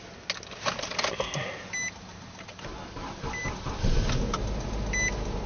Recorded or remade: recorded